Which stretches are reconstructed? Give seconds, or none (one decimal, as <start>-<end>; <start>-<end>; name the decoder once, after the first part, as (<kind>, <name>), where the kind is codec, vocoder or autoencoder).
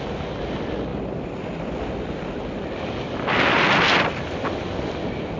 none